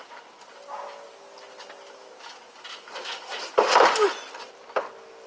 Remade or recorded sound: recorded